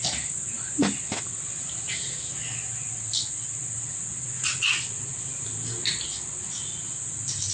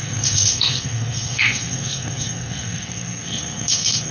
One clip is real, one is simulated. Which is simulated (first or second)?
second